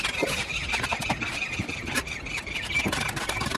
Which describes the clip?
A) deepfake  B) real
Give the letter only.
B